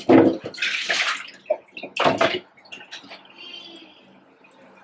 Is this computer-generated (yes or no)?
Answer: no